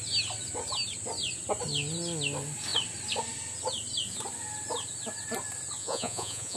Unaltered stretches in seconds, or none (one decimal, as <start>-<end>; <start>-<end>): 0.0-5.8

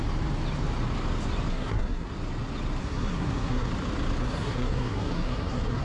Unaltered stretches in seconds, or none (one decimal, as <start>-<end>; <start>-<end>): 0.0-1.5; 2.1-2.8; 3.7-4.2

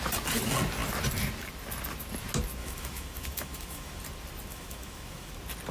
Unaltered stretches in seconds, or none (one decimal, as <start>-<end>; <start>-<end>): 0.0-2.6; 4.0-4.5; 5.3-5.7

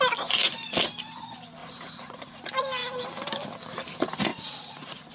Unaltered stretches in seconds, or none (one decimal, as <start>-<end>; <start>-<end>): 0.0-1.6; 2.4-4.3

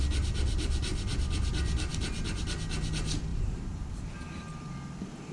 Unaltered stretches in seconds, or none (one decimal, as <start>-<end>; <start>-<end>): 0.0-3.3; 4.1-5.3